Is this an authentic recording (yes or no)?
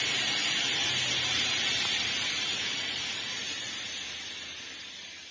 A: yes